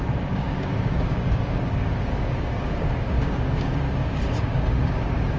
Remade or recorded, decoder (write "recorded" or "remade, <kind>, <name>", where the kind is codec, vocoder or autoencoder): remade, codec, DAC